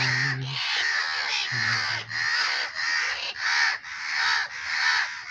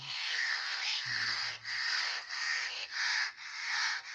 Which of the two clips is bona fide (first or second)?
first